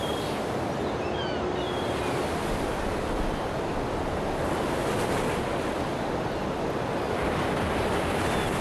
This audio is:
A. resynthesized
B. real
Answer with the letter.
B